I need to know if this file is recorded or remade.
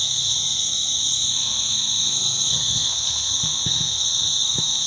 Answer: remade